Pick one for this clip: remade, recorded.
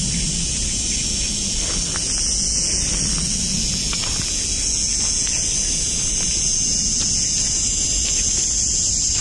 recorded